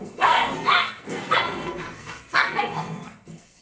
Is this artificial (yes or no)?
yes